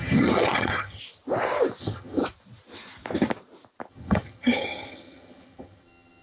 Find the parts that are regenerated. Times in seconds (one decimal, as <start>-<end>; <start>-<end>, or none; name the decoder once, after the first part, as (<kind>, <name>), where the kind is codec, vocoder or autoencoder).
0.0-1.0 (vocoder, HiFi-GAN); 1.8-2.2; 3.9-6.2